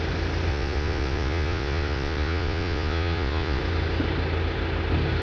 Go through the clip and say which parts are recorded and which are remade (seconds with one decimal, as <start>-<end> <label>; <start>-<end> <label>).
0.0-0.5 recorded; 0.5-3.6 remade; 3.6-5.2 recorded